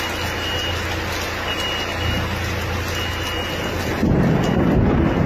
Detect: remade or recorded recorded